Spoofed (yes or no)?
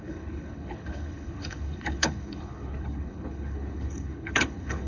yes